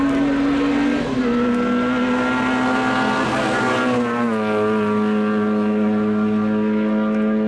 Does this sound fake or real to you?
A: real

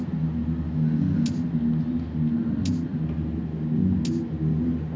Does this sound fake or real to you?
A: real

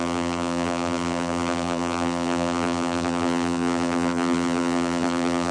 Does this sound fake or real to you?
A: fake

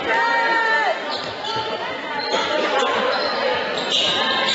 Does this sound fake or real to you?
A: real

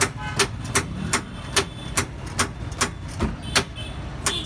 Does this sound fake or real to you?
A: real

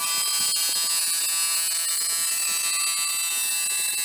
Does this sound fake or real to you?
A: real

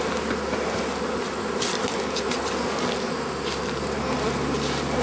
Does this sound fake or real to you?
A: real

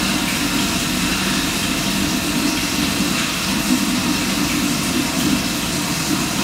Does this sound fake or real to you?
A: real